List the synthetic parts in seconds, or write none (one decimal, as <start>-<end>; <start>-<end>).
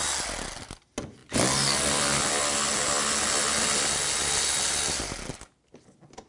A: none